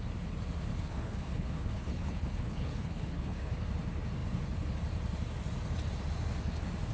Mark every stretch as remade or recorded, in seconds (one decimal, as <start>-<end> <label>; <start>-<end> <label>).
0.0-0.7 recorded; 0.7-3.5 remade; 3.5-6.9 recorded